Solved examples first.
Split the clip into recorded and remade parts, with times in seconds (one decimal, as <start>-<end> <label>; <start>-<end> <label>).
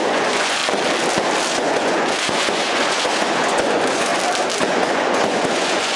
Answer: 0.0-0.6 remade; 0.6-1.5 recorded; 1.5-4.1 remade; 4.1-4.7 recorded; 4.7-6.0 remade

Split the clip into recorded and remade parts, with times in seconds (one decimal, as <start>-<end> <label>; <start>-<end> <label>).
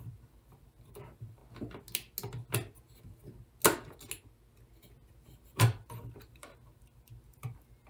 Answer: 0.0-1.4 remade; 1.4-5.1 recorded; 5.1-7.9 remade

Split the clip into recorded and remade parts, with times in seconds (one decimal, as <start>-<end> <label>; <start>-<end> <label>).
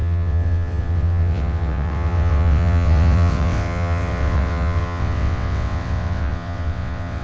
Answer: 0.0-7.2 remade